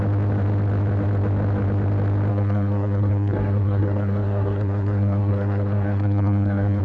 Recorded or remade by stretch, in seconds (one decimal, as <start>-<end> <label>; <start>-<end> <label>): 0.0-2.3 recorded; 2.3-6.8 remade